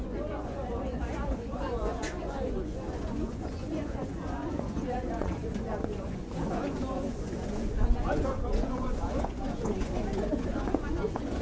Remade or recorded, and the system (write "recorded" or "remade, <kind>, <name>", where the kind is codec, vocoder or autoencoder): remade, vocoder, Vocos